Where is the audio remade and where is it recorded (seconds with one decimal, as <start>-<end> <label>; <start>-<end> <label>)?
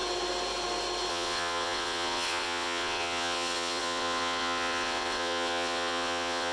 0.0-1.1 recorded; 1.1-6.5 remade